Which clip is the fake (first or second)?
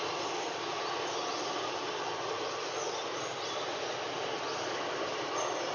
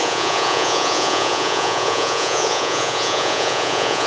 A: second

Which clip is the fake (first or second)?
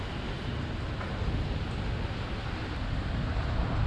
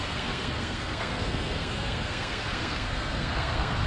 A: second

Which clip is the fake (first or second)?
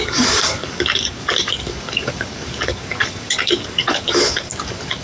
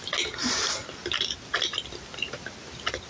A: first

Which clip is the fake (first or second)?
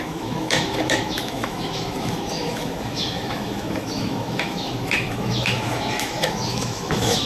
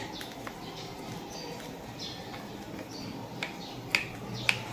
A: first